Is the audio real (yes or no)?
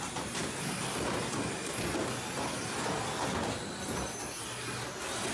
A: yes